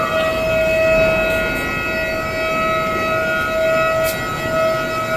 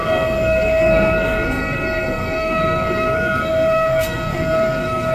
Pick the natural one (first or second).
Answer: first